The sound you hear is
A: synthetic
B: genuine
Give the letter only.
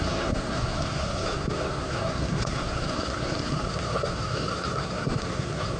A